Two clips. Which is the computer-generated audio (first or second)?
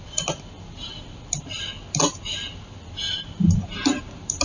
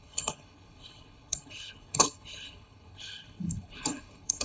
second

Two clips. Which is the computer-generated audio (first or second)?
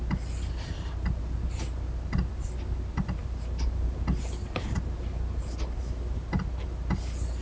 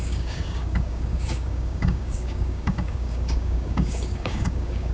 second